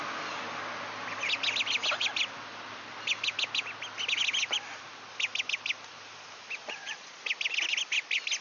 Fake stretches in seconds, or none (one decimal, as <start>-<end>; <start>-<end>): 6.6-7.2